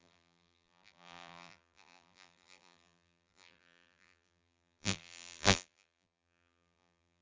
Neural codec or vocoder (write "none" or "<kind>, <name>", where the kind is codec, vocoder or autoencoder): vocoder, BigVGAN v2